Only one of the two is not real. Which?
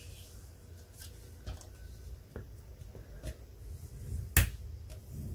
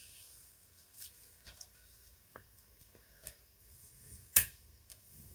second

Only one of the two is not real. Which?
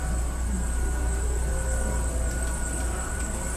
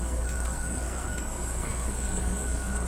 second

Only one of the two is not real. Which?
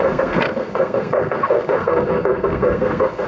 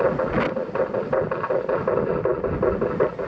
first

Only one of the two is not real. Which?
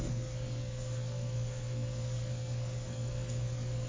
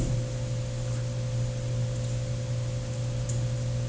first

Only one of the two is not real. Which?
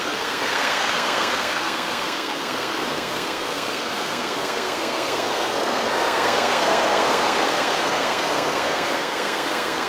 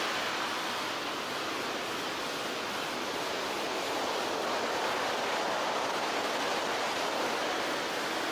first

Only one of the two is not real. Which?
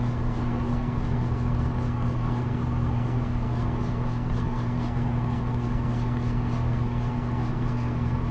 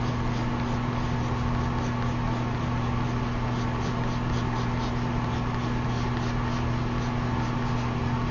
first